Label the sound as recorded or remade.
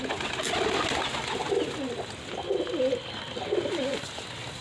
recorded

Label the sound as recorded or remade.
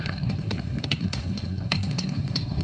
remade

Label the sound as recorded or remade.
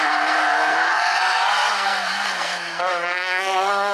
remade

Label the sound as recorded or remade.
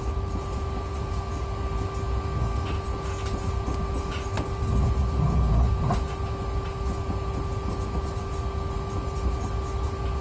recorded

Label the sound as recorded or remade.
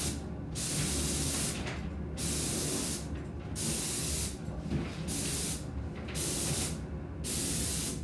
recorded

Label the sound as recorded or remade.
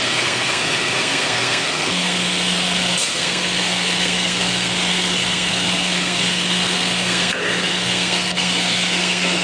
remade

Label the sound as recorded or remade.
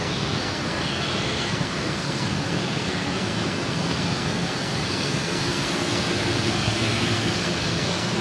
remade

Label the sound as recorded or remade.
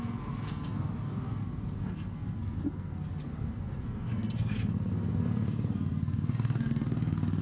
remade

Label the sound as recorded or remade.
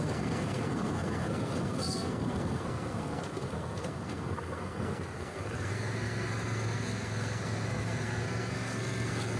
remade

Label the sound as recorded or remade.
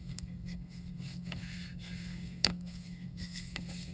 remade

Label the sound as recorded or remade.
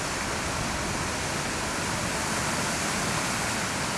recorded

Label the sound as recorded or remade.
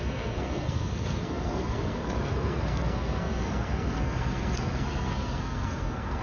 remade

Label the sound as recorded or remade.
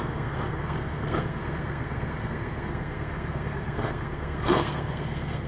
remade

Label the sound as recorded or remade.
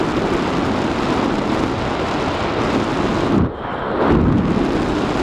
recorded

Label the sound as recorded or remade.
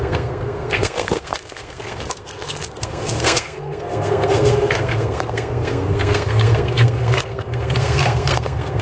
remade